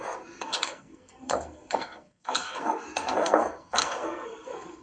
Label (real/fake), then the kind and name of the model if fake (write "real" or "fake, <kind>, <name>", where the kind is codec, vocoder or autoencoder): fake, codec, SNAC